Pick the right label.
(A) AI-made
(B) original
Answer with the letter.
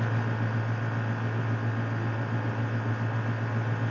B